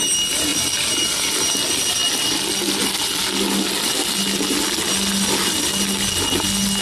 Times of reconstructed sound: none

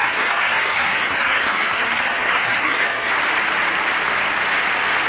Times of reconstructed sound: 0.0-3.1 (codec, SNAC)

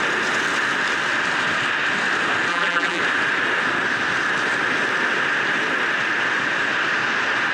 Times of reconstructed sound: 2.5-3.0 (vocoder, BigVGAN v2)

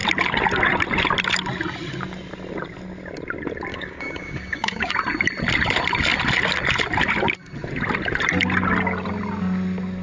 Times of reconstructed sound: 3.7-4.9 (codec, DAC)

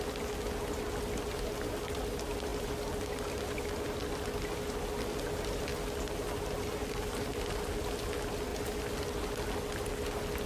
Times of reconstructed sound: none